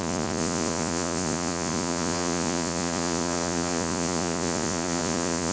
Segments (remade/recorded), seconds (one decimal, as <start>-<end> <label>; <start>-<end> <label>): 0.0-5.5 remade